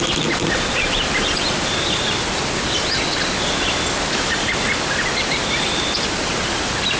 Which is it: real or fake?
real